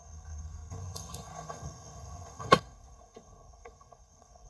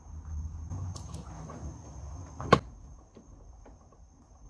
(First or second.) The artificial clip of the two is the first